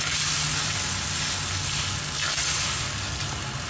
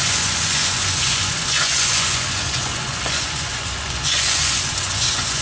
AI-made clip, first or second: second